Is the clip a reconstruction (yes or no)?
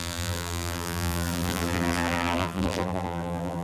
yes